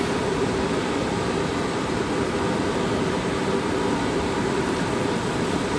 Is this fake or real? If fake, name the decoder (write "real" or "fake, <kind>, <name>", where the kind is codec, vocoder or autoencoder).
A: fake, vocoder, BigVGAN v2